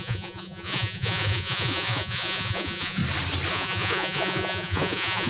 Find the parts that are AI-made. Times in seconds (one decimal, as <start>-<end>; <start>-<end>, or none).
0.0-3.0; 3.5-5.3